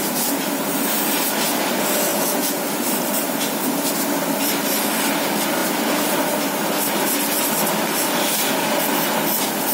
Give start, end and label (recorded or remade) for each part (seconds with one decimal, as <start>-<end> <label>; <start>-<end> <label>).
0.0-2.1 recorded; 2.1-2.6 remade; 2.6-9.7 recorded